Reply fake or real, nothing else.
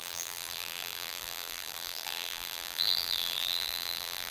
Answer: fake